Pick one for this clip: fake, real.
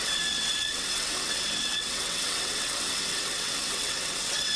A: fake